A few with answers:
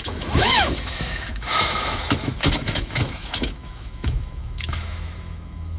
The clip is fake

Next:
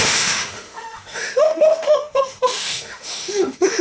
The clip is fake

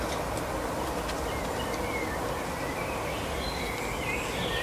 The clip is real